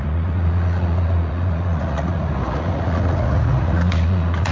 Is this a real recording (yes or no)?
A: no